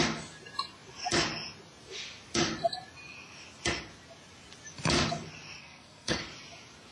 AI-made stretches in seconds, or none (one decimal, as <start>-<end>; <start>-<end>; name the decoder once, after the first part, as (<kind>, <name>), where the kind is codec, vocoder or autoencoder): 5.6-6.2 (codec, SNAC)